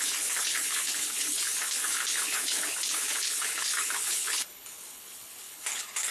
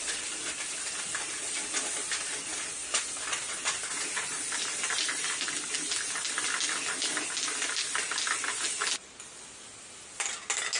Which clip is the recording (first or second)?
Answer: second